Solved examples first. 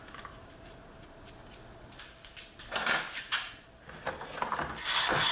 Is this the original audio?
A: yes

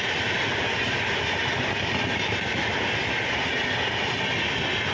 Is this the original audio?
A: yes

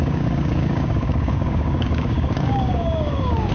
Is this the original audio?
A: no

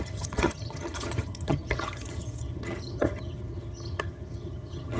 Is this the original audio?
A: no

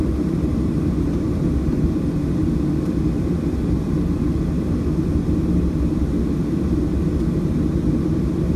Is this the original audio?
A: yes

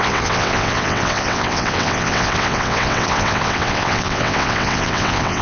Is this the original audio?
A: no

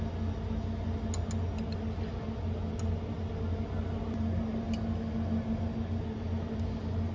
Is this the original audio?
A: yes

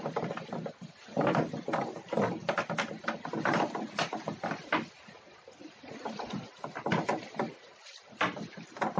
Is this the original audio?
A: yes